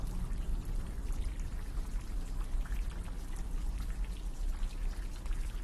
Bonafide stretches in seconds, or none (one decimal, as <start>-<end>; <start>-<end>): 0.0-5.6